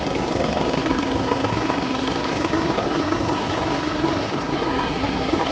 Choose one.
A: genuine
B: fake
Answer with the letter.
B